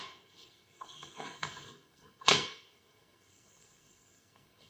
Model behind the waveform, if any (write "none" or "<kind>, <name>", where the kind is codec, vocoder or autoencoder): codec, SNAC